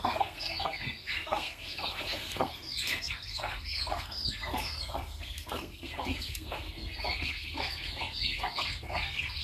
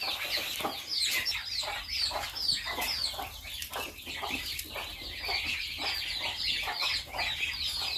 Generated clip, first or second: first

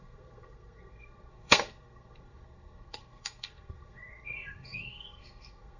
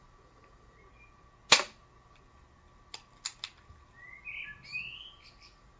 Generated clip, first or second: first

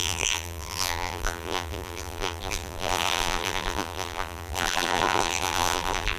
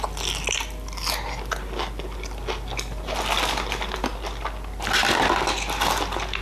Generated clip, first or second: first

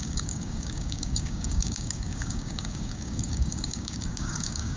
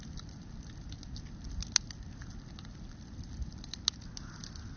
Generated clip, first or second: first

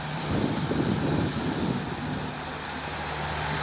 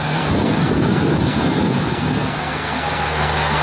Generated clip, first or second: second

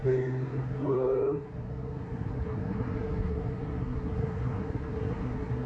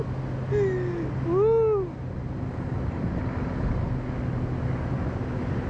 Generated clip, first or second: first